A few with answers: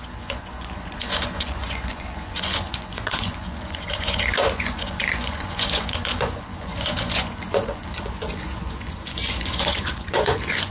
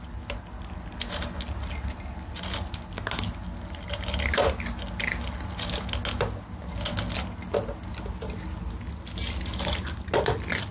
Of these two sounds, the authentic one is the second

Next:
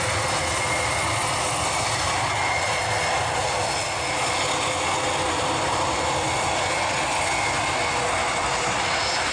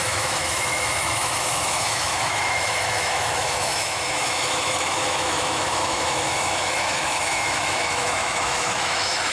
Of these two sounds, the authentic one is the first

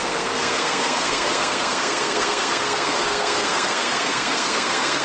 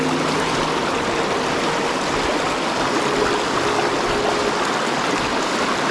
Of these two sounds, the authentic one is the second